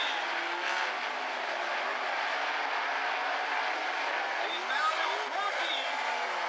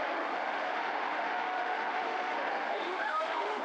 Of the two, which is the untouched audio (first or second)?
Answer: first